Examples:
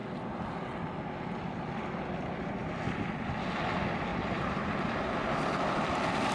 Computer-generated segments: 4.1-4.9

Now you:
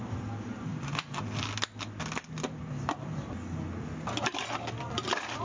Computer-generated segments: none

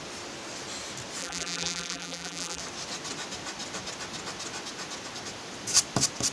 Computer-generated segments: 1.2-2.6

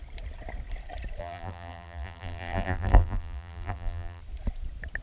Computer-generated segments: 1.2-4.2

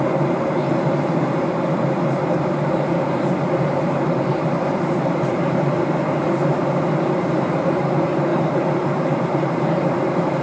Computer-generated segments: 0.0-10.4

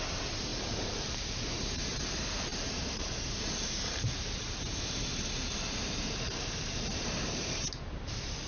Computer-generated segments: 0.0-8.5